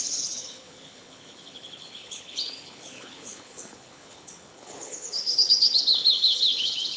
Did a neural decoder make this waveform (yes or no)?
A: yes